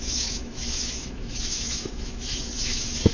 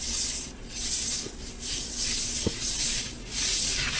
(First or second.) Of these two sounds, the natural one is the second